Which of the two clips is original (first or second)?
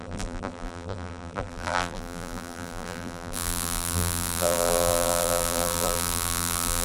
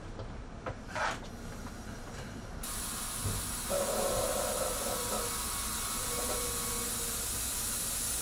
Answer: second